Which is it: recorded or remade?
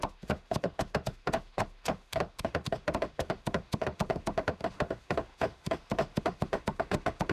remade